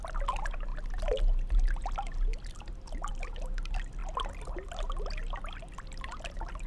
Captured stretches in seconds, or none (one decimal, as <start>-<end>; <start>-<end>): 0.0-6.7